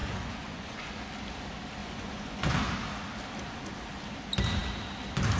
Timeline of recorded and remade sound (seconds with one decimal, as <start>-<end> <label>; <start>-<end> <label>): 0.0-1.0 remade; 1.0-1.8 recorded; 1.8-2.5 remade; 2.5-5.4 recorded